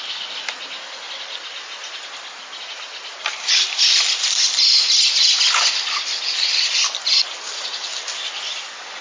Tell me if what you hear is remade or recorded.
recorded